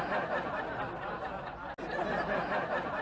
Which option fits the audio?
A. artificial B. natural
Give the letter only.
B